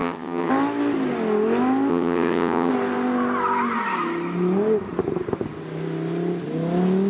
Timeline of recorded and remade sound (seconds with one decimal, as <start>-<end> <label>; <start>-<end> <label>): 0.0-0.5 remade; 0.5-1.9 recorded; 1.9-2.7 remade; 2.7-7.1 recorded